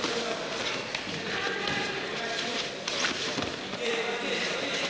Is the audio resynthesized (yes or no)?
no